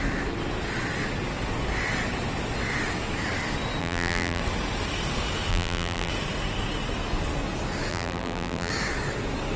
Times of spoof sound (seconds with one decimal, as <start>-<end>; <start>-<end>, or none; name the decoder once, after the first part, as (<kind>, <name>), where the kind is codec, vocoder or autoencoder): 3.8-4.4 (vocoder, BigVGAN v2); 5.5-6.1; 7.9-8.7

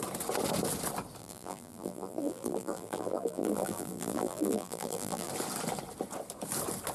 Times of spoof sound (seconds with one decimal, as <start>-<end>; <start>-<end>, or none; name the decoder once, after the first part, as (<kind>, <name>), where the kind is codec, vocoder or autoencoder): 1.2-5.3 (vocoder, BigVGAN v2)

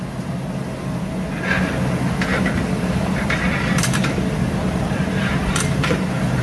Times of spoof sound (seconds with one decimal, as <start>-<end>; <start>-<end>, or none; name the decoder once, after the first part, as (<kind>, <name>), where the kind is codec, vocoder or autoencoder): 2.3-6.4 (vocoder, BigVGAN v2)

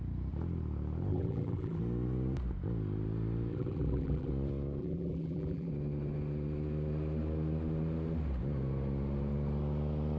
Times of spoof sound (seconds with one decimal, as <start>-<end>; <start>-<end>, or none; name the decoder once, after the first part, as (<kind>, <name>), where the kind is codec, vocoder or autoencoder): 1.1-1.8 (vocoder, BigVGAN v2); 3.5-4.3; 4.8-5.7

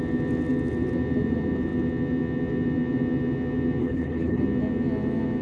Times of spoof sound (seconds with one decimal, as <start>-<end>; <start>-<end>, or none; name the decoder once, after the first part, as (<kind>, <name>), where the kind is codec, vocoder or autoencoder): 3.8-4.4 (codec, HILCodec)

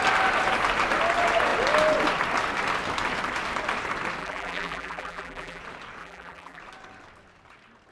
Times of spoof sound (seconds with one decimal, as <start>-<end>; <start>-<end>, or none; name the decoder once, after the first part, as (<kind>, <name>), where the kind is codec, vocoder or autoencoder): 4.2-5.6 (vocoder, BigVGAN v2); 6.0-6.6